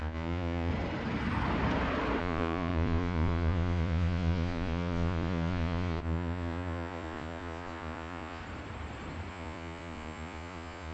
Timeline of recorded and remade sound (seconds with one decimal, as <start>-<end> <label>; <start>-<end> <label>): 0.0-0.7 remade; 0.7-2.2 recorded; 2.2-8.4 remade; 8.4-9.3 recorded; 9.3-10.9 remade